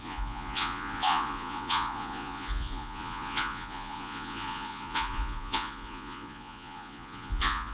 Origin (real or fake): fake